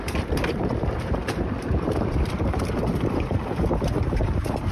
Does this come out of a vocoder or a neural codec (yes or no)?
yes